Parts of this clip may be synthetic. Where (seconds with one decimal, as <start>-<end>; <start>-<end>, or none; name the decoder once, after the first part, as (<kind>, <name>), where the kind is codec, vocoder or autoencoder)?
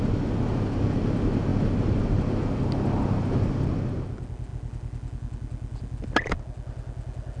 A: none